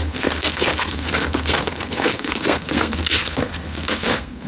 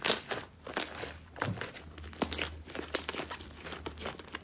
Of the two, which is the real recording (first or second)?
second